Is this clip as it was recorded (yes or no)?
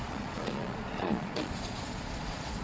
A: no